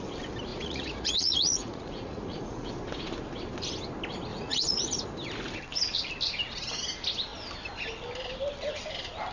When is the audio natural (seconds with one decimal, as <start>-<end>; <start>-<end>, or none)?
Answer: 0.0-0.5; 2.7-4.3; 4.9-9.3